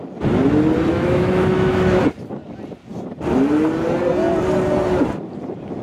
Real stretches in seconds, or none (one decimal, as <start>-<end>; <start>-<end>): 0.0-0.9; 2.0-5.8